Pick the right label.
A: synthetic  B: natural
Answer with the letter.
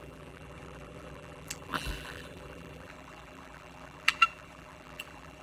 A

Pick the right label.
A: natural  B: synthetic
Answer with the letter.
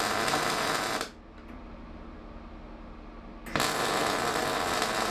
A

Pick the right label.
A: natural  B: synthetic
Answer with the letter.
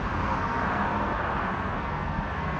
B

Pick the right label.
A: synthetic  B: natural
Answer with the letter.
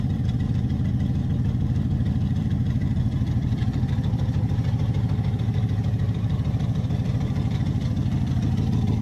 A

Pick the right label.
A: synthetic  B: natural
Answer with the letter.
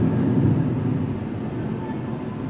B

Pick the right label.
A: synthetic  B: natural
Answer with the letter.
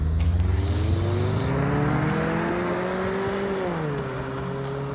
B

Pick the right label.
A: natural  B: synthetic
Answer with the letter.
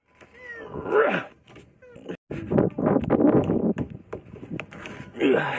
A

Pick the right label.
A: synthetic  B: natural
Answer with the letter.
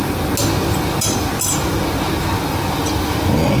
B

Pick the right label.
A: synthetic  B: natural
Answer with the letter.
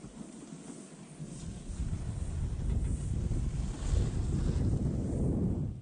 B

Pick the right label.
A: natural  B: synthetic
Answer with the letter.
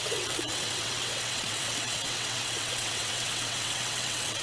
B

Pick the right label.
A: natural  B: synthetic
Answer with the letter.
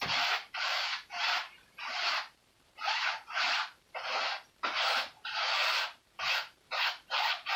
B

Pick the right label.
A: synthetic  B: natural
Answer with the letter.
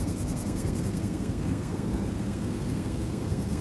A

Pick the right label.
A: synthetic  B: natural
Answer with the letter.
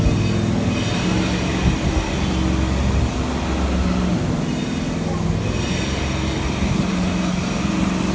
B